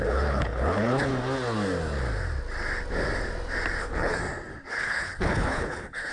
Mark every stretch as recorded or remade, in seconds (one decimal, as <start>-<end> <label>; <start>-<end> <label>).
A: 0.0-1.1 remade; 1.1-3.8 recorded; 3.8-4.2 remade; 4.2-4.7 recorded; 4.7-6.1 remade

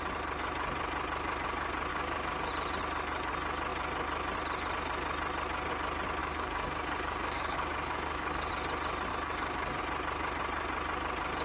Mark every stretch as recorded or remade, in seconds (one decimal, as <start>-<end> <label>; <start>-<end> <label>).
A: 0.0-1.9 recorded; 1.9-2.5 remade; 2.5-6.2 recorded; 6.2-8.5 remade; 8.5-9.1 recorded; 9.1-9.8 remade; 9.8-11.4 recorded

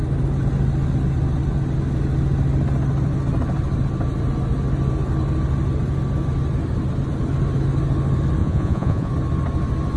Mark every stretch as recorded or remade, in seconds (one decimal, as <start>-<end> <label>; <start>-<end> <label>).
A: 0.0-8.4 recorded; 8.4-9.1 remade; 9.1-10.0 recorded

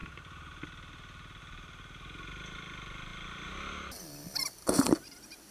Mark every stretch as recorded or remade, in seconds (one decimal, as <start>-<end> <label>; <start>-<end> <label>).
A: 0.0-5.5 recorded

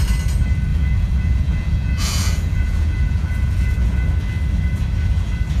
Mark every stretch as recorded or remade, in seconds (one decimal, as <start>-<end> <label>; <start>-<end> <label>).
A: 0.0-0.7 recorded; 0.7-4.1 remade; 4.1-5.6 recorded

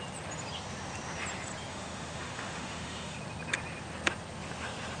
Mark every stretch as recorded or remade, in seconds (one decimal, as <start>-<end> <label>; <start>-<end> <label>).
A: 0.0-1.7 recorded; 1.7-3.2 remade; 3.2-5.0 recorded

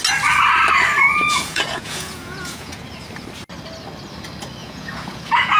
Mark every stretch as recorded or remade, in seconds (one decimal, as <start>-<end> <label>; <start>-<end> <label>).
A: 0.0-1.1 recorded; 1.1-2.8 remade; 2.8-4.6 recorded; 4.6-5.6 remade

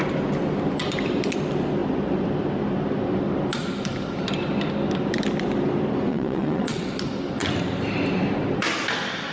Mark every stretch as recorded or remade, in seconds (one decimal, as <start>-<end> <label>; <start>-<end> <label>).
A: 0.0-6.1 recorded; 6.1-6.9 remade; 6.9-9.3 recorded